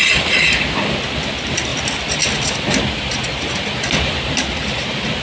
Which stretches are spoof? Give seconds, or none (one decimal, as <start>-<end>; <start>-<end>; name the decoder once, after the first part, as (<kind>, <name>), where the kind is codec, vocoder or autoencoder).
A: none